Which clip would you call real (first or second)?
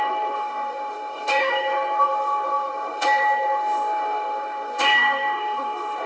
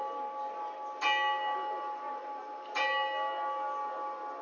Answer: second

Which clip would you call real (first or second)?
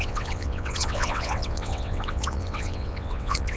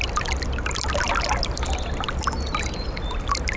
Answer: second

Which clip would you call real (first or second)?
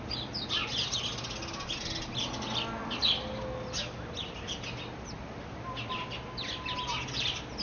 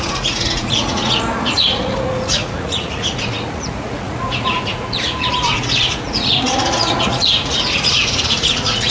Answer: first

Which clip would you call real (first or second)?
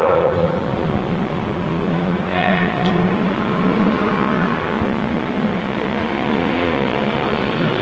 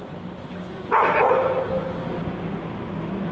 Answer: second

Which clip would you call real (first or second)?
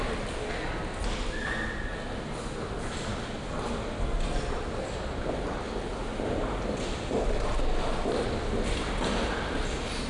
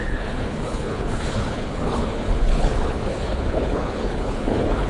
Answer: first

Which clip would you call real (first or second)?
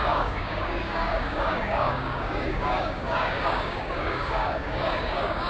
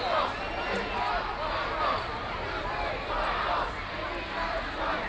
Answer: second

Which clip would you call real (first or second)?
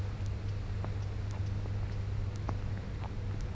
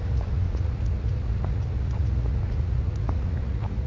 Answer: first